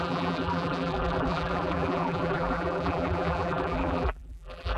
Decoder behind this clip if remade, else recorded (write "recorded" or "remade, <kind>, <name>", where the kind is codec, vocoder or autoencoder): remade, vocoder, BigVGAN v2